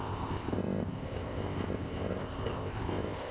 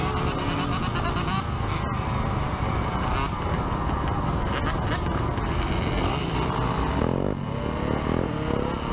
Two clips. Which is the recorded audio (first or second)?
second